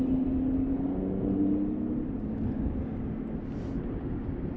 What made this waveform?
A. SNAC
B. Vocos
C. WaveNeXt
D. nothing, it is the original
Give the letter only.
D